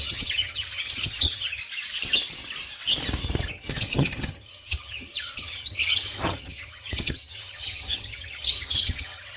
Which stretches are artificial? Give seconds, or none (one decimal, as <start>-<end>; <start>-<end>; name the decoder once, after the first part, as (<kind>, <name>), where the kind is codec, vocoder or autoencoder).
0.0-1.6 (vocoder, HiFi-GAN); 3.5-9.4